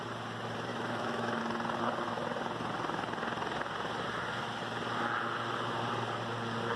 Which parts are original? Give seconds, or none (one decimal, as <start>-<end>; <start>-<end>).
0.0-0.7; 1.4-6.8